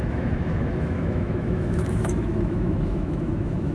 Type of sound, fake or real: fake